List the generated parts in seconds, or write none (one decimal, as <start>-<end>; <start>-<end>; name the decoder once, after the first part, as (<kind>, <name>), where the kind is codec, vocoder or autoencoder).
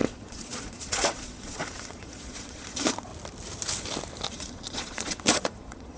0.0-3.1 (vocoder, Vocos); 4.3-6.0